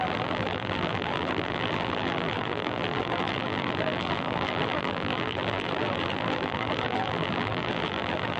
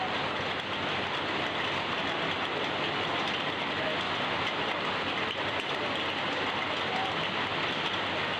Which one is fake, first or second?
first